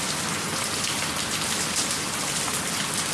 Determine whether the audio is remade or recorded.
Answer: recorded